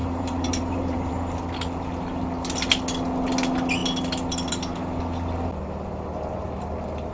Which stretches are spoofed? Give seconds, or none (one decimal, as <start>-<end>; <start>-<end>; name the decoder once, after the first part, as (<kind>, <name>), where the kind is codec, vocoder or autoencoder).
0.0-1.1 (vocoder, BigVGAN v2)